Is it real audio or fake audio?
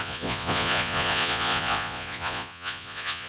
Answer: fake